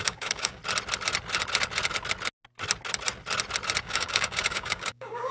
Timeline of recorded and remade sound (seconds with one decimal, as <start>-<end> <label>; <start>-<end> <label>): 0.0-0.6 remade; 0.6-3.8 recorded; 3.8-5.3 remade